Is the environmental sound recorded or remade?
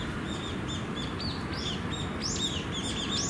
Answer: recorded